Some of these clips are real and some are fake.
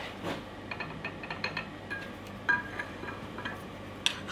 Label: real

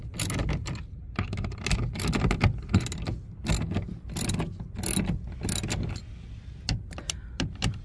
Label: real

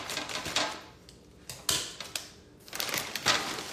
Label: real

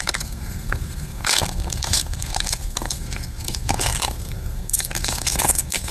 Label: fake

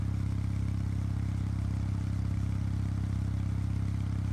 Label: real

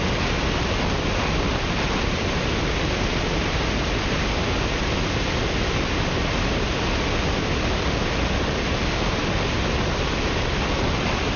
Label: real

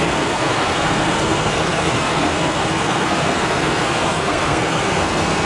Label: fake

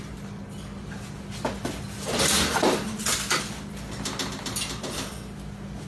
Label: real